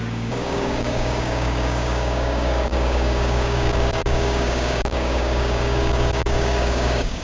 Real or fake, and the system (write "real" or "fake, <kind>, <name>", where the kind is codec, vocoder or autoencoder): fake, codec, DAC